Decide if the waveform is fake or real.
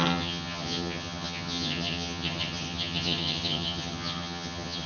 fake